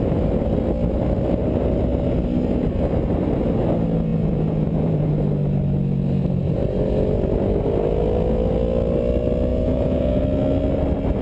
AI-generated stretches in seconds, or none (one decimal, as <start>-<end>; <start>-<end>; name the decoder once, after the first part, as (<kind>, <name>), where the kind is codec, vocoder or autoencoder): 4.1-5.1 (vocoder, Vocos); 9.5-10.2